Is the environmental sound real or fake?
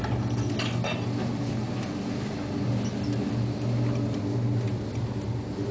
real